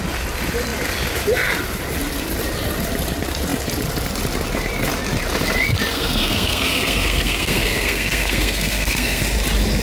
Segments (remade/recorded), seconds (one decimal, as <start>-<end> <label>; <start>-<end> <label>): 0.0-5.9 recorded; 5.9-9.2 remade; 9.2-9.8 recorded

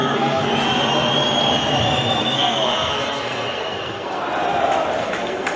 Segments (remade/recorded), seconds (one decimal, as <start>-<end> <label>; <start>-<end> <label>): 0.0-0.5 remade; 0.5-2.2 recorded; 2.2-4.2 remade; 4.2-5.0 recorded; 5.0-5.6 remade

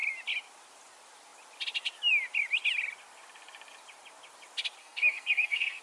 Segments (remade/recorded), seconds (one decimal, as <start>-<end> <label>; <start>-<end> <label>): 0.0-4.8 recorded; 4.8-5.8 remade

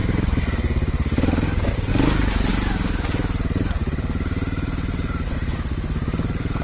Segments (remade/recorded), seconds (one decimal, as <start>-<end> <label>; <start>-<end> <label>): 0.0-6.6 recorded

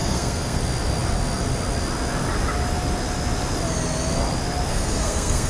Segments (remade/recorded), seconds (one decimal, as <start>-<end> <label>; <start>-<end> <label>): 0.0-0.6 remade; 0.6-4.7 recorded; 4.7-5.5 remade

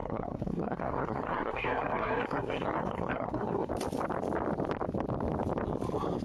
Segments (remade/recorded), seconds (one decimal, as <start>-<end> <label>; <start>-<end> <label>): 0.0-3.7 remade; 3.7-6.2 recorded

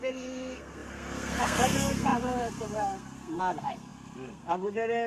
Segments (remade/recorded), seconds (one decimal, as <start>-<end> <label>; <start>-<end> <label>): 0.0-5.1 remade